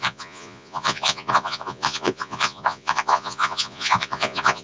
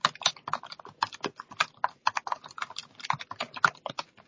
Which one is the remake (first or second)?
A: first